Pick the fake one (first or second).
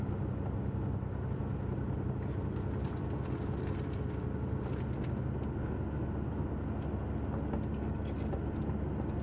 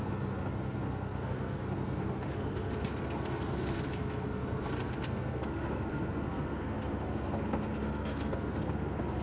second